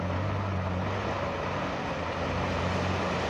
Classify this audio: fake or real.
real